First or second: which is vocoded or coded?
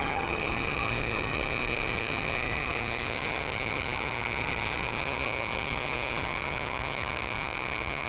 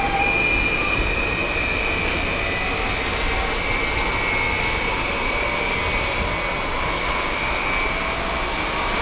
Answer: first